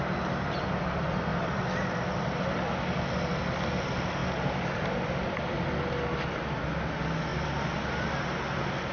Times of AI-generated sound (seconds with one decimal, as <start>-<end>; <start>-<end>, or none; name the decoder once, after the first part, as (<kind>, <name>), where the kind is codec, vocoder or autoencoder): 1.3-3.4 (vocoder, BigVGAN v2); 4.2-5.8